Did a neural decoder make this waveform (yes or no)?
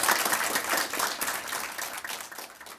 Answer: no